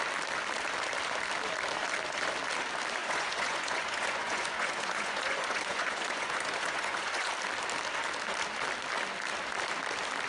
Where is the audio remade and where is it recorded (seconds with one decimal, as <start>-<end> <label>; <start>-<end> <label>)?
0.0-3.0 recorded; 3.0-7.3 remade; 7.3-10.3 recorded